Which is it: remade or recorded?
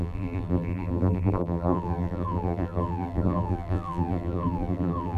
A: remade